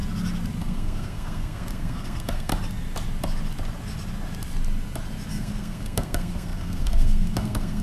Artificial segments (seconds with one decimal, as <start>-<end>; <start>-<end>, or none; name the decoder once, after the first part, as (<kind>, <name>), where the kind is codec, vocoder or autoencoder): 0.6-2.5 (codec, SNAC); 5.3-7.8